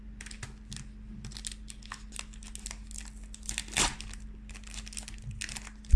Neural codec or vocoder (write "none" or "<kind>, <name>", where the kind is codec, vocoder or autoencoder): none